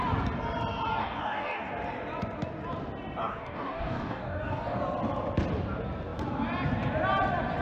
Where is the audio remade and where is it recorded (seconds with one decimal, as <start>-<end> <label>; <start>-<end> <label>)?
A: 0.0-1.0 recorded; 1.0-1.7 remade; 1.7-3.3 recorded; 3.3-4.8 remade; 4.8-7.6 recorded